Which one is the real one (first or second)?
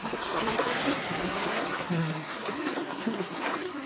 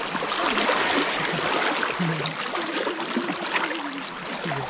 second